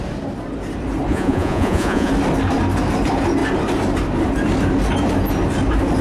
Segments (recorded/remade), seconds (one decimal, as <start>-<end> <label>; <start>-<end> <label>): 0.0-1.1 recorded; 1.1-2.1 remade; 2.1-6.0 recorded

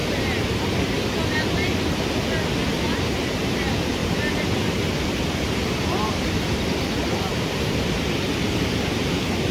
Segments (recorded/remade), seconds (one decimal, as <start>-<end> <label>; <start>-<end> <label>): 0.0-4.0 recorded; 4.0-8.9 remade; 8.9-9.5 recorded